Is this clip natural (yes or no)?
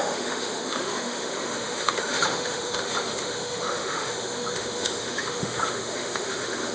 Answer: no